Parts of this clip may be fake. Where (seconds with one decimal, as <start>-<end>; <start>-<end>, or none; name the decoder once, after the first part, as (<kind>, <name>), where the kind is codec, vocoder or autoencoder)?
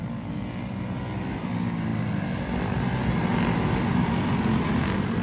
none